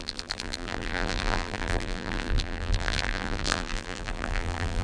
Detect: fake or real fake